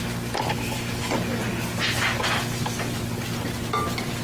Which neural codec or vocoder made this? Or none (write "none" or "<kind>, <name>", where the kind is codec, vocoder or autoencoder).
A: none